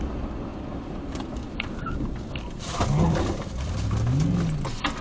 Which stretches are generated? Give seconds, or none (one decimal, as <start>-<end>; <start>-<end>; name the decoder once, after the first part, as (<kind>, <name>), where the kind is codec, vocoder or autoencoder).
0.5-3.5 (vocoder, BigVGAN v2)